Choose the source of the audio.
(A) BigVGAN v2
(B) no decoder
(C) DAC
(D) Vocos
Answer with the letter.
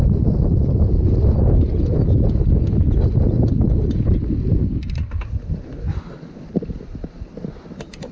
B